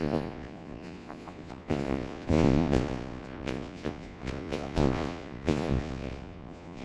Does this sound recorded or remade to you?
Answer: remade